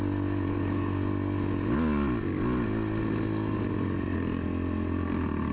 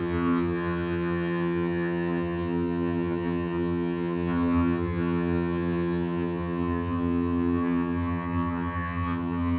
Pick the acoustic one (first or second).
first